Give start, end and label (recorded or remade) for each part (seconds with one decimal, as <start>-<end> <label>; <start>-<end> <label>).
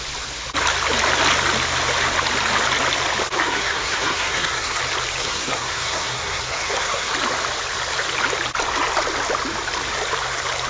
0.0-3.4 recorded; 3.4-4.8 remade; 4.8-5.2 recorded; 5.2-7.1 remade; 7.1-10.7 recorded